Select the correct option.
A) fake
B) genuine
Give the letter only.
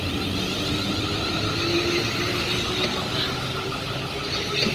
B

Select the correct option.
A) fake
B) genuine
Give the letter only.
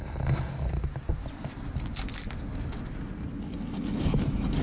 B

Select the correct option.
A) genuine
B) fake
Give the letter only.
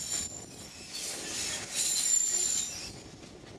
A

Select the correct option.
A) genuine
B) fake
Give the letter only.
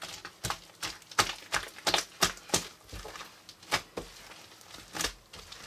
A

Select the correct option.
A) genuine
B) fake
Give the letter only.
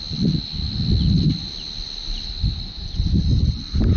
A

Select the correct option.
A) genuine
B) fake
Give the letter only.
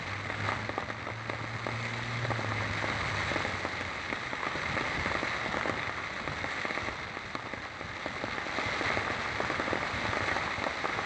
A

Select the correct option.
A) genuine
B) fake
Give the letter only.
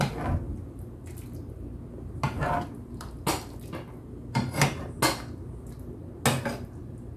A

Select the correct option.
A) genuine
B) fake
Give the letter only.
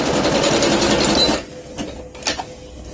A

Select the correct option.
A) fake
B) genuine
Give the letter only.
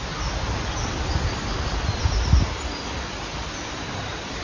B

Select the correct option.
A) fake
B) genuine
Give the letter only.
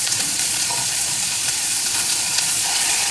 A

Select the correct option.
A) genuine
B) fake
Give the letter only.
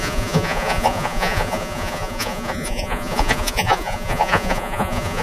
B